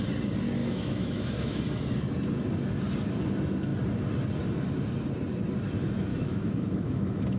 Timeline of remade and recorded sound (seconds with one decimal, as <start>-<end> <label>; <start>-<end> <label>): 0.0-0.6 recorded; 0.6-1.6 remade; 1.6-6.1 recorded; 6.1-7.4 remade